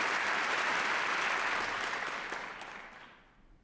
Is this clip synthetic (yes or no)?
no